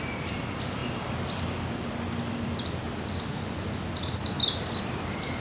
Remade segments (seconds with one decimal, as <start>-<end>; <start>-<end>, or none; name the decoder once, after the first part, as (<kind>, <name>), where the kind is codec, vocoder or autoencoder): none